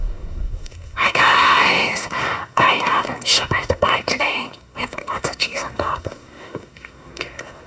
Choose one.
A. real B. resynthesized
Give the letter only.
B